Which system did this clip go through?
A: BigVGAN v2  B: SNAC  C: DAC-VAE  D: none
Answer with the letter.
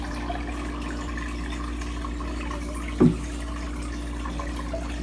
D